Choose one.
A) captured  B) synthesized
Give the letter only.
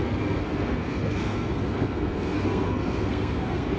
B